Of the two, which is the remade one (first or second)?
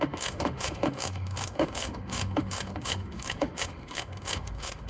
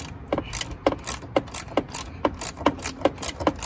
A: first